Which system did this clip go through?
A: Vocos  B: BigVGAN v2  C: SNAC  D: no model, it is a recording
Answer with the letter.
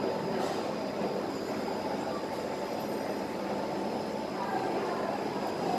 D